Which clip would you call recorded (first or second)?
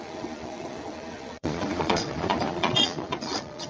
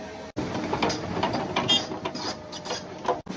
second